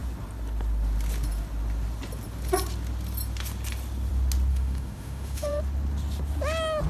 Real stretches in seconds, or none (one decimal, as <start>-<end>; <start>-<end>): 0.0-4.5; 5.6-6.9